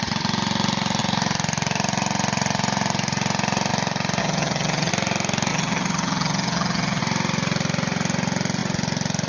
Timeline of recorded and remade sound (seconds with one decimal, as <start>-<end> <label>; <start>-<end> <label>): 0.0-4.2 recorded; 4.2-4.9 remade; 4.9-5.5 recorded; 5.5-7.0 remade; 7.0-9.3 recorded